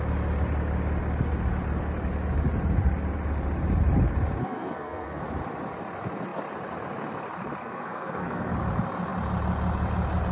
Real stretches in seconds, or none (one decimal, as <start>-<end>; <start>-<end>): 0.0-4.4; 5.2-7.6; 8.5-10.3